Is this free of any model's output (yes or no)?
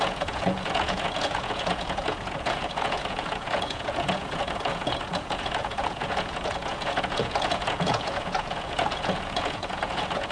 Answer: no